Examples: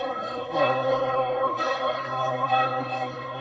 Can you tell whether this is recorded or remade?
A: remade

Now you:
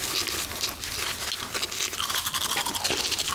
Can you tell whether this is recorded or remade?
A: recorded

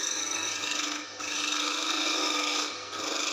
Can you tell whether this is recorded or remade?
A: remade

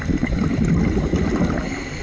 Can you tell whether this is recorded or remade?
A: recorded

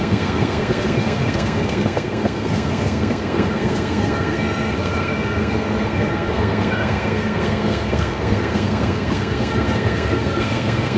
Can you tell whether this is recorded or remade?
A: remade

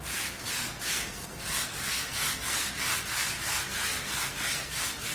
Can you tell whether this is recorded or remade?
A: remade